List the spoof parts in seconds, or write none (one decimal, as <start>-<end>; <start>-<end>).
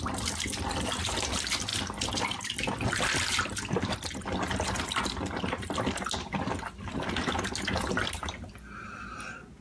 none